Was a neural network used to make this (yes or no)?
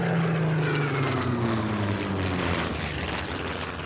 no